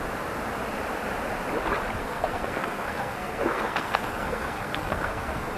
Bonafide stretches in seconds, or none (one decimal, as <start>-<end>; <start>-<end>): 0.0-2.0